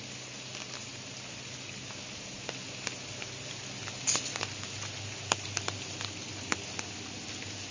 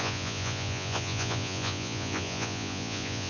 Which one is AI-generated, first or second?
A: second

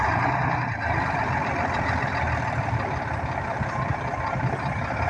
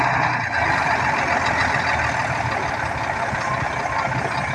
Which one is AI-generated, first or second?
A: first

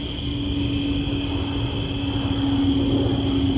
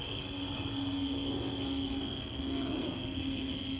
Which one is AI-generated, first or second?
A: second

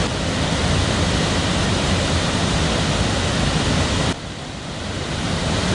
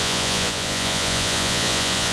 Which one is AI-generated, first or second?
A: second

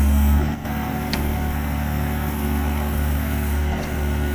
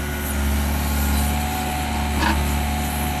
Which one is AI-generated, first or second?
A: first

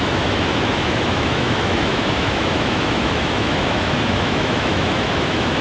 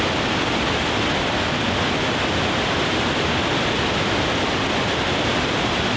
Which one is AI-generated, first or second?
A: first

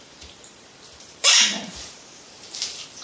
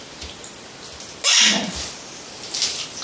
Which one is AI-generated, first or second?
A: first